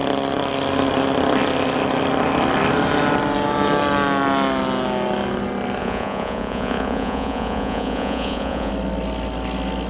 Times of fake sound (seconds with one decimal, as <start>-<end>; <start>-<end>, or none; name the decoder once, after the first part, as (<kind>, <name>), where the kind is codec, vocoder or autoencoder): 5.8-8.7 (vocoder, Vocos)